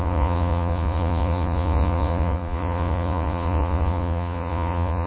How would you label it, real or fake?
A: fake